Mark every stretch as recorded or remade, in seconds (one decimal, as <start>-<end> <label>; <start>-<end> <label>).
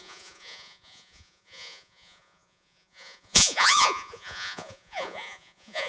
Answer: 0.0-5.9 remade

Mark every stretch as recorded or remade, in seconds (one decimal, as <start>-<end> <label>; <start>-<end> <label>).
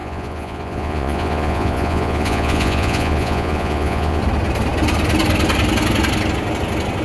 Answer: 0.0-4.2 remade; 4.2-7.0 recorded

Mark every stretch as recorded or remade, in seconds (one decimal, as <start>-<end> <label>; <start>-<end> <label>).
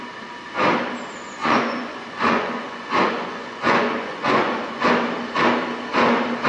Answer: 0.0-1.4 recorded; 1.4-4.9 remade; 4.9-6.5 recorded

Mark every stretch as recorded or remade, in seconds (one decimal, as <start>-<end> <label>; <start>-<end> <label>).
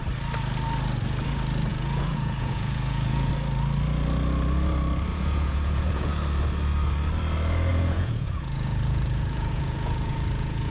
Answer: 0.0-1.7 recorded; 1.7-3.3 remade; 3.3-5.1 recorded; 5.1-6.1 remade; 6.1-7.7 recorded; 7.7-10.7 remade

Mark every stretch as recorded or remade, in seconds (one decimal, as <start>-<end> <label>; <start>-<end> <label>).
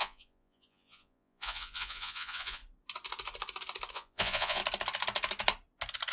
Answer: 0.0-2.6 remade; 2.6-3.9 recorded; 3.9-4.6 remade; 4.6-6.1 recorded